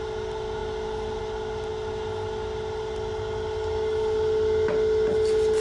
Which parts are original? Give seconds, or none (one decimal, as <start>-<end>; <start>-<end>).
0.0-5.6